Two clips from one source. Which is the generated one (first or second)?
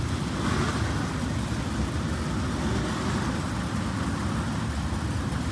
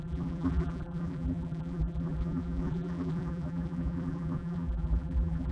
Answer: second